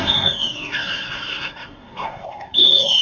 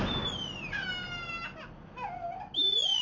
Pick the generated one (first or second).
first